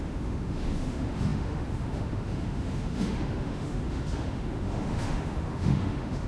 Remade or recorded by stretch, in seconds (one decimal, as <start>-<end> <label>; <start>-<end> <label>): 0.0-6.3 remade